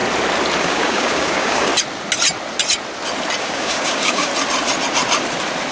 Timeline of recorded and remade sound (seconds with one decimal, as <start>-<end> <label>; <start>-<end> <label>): 0.0-0.6 recorded; 0.6-1.7 remade; 1.7-3.4 recorded; 3.4-4.3 remade; 4.3-5.7 recorded